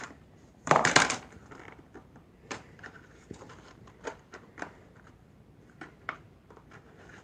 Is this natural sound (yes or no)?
no